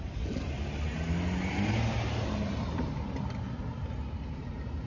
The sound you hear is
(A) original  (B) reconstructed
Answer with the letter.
A